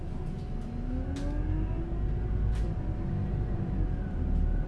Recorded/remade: recorded